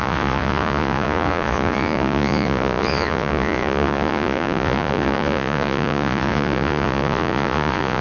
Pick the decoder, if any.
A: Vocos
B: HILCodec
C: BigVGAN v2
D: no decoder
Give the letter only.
A